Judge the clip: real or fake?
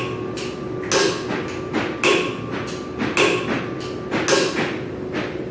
real